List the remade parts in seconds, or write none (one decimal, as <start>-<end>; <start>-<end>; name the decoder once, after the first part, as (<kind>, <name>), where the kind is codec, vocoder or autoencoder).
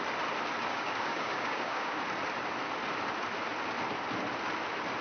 0.7-2.0 (codec, DAC)